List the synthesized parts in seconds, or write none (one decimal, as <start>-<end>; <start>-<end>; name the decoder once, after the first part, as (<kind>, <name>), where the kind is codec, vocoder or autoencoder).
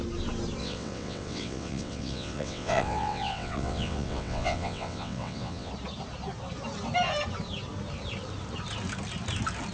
0.6-5.7 (vocoder, WaveNeXt)